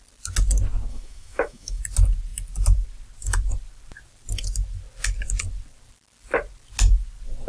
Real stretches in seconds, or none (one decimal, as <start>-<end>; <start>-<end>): 0.0-0.9; 1.8-7.5

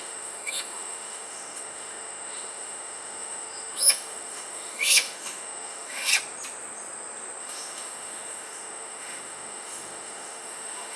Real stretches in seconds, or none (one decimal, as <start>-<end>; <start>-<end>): 6.1-7.4

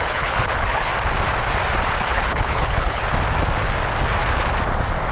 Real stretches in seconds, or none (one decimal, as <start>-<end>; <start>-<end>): 0.9-1.9; 3.0-5.1

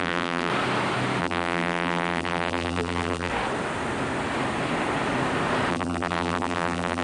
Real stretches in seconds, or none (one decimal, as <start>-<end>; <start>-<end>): 0.5-1.2; 3.3-5.7